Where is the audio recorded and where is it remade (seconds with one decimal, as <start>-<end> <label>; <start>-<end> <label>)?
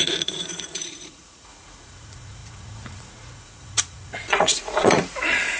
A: 0.0-5.6 remade